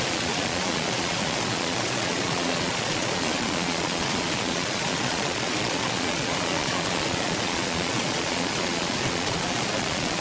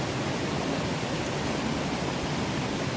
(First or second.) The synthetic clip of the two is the first